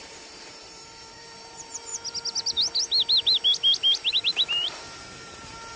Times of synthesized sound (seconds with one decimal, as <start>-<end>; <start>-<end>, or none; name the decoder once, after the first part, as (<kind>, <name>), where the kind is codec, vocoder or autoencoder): 0.0-1.9 (vocoder, BigVGAN v2); 4.1-5.8